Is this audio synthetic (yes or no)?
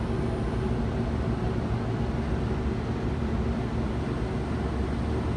no